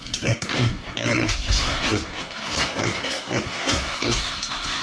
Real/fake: fake